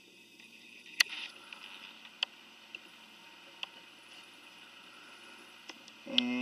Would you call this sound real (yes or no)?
yes